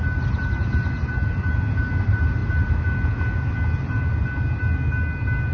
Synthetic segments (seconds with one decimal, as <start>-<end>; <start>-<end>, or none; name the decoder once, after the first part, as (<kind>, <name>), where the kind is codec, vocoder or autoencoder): none